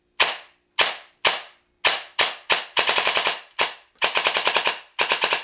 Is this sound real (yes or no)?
yes